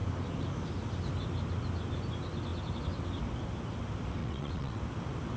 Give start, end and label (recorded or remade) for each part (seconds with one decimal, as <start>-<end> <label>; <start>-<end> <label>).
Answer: 0.0-4.2 recorded; 4.2-4.8 remade; 4.8-5.4 recorded